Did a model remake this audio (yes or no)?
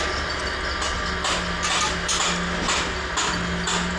no